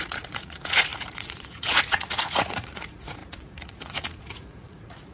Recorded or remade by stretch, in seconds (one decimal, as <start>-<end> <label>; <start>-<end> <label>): 0.0-5.1 remade